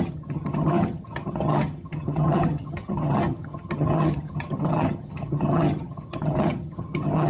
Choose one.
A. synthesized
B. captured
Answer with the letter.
A